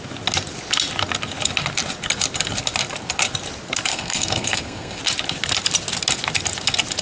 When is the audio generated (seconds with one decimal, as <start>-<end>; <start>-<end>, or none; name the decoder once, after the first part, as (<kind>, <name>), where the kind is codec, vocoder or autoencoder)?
3.9-5.0 (codec, SNAC)